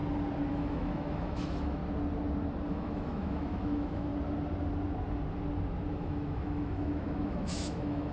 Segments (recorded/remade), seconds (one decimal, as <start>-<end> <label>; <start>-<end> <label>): 0.0-0.5 recorded; 0.5-1.8 remade; 1.8-2.7 recorded; 2.7-4.1 remade; 4.1-5.9 recorded; 5.9-8.1 remade